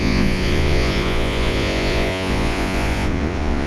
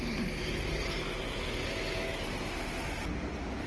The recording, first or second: second